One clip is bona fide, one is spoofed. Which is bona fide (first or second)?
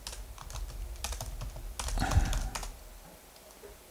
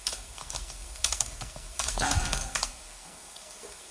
first